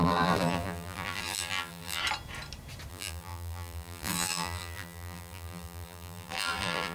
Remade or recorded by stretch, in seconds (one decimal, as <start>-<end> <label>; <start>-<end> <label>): 0.0-2.0 remade; 2.0-2.9 recorded; 2.9-6.9 remade